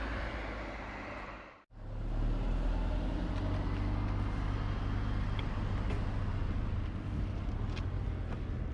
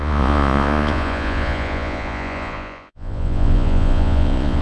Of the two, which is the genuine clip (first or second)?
first